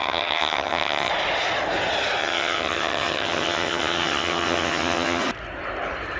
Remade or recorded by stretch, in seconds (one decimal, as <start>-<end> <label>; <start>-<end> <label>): 0.0-1.1 remade; 1.1-2.2 recorded; 2.2-5.2 remade; 5.2-6.2 recorded